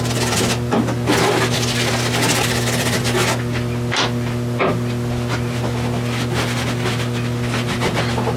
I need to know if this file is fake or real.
real